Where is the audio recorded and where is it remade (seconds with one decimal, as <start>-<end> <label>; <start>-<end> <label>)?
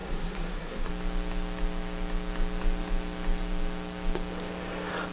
0.0-0.9 remade; 0.9-5.1 recorded